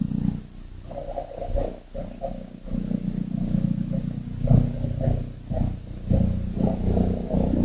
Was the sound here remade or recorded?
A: recorded